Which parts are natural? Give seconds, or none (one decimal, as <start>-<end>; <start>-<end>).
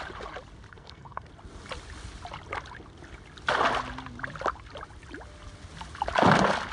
0.0-0.7; 1.3-6.7